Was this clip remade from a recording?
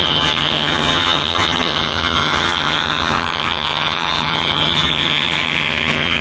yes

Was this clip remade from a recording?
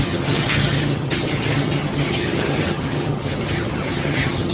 yes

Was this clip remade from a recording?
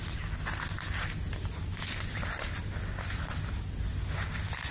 no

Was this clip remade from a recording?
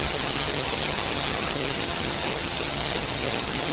yes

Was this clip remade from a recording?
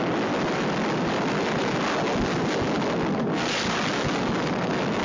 no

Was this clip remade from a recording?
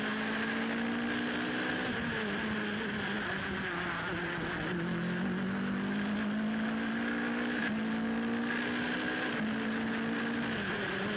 no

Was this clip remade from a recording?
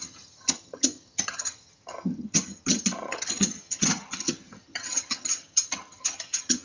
yes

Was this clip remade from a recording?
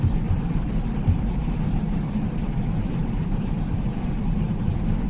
no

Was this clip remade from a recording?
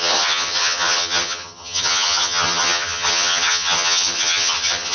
yes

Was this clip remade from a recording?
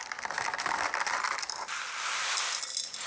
no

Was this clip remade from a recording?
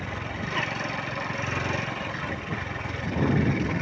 no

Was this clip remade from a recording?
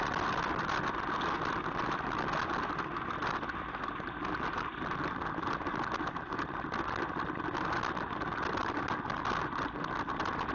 no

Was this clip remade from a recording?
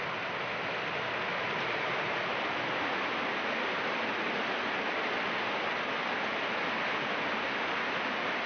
no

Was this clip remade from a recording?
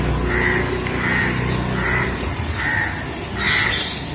no